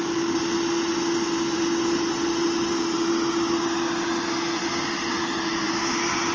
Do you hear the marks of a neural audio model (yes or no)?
no